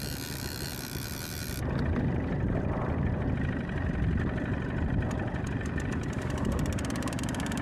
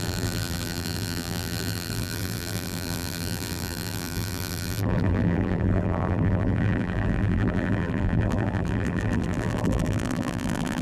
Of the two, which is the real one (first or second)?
first